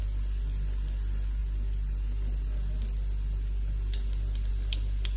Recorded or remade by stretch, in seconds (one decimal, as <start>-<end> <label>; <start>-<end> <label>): 0.0-5.2 recorded

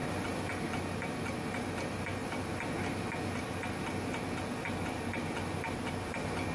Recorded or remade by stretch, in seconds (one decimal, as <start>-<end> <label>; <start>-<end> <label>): 0.0-6.5 recorded

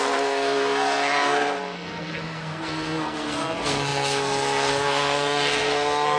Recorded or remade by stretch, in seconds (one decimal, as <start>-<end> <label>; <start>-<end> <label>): 0.0-6.2 remade

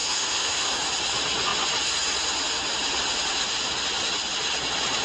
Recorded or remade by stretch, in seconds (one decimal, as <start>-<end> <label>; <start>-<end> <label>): 0.0-0.8 remade; 0.8-5.0 recorded